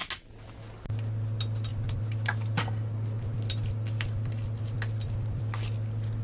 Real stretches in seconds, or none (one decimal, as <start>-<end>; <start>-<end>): 0.0-1.7; 5.4-6.2